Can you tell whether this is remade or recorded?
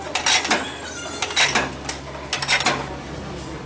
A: recorded